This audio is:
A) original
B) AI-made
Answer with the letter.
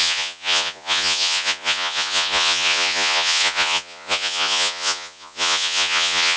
B